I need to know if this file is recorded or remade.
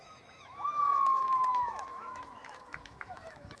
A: remade